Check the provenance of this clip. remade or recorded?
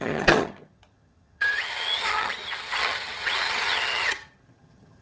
remade